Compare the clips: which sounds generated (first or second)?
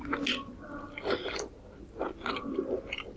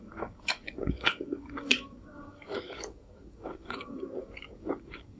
second